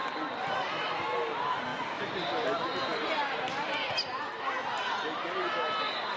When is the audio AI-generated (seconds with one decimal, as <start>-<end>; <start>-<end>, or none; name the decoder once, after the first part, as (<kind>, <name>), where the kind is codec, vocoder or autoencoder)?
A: 0.0-1.0 (vocoder, BigVGAN v2); 2.9-4.8